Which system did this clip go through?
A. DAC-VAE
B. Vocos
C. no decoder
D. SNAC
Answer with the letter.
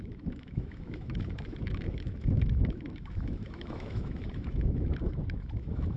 A